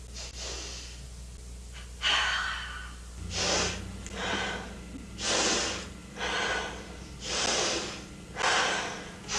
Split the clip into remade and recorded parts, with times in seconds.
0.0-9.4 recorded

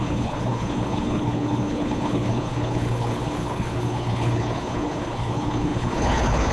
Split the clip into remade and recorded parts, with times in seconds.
0.0-6.5 remade

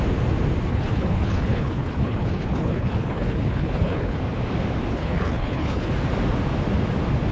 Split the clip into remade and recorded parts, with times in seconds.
0.0-0.7 recorded; 0.7-4.2 remade; 4.2-4.9 recorded; 4.9-5.9 remade; 5.9-7.3 recorded

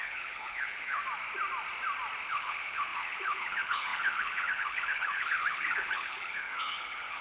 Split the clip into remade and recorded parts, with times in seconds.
0.0-1.0 remade; 1.0-2.3 recorded; 2.3-7.2 remade